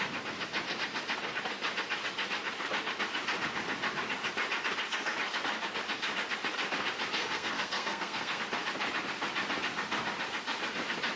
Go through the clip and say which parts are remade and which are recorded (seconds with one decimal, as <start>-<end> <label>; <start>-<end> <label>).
0.0-7.2 recorded; 7.2-8.4 remade; 8.4-11.2 recorded